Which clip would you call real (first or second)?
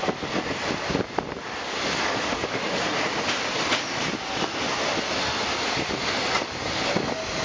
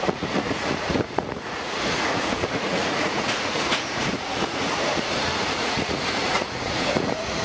first